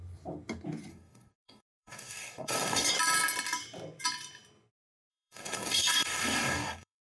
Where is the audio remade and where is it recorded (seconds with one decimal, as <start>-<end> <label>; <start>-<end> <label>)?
0.0-0.9 recorded; 0.9-2.9 remade; 2.9-5.1 recorded; 5.1-7.1 remade